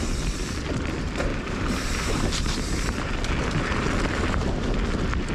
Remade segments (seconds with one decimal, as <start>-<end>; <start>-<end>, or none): 1.3-3.1